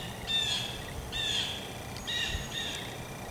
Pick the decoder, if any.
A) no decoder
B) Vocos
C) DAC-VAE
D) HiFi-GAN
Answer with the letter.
A